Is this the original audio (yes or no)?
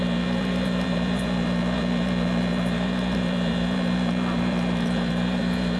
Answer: no